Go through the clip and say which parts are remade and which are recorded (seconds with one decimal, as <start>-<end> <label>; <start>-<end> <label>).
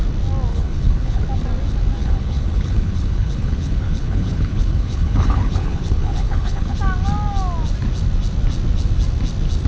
0.0-0.5 recorded; 0.5-1.2 remade; 1.2-2.0 recorded; 2.0-6.8 remade; 6.8-9.7 recorded